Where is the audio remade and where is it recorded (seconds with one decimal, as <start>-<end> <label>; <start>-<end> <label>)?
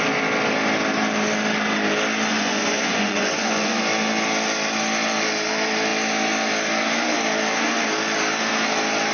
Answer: 0.0-2.3 recorded; 2.3-3.8 remade; 3.8-9.1 recorded